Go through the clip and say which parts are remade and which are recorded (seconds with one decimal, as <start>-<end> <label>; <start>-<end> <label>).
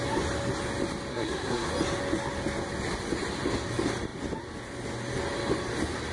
0.0-1.1 recorded; 1.1-1.7 remade; 1.7-6.1 recorded